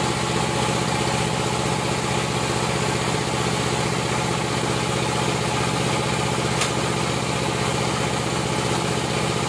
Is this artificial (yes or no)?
no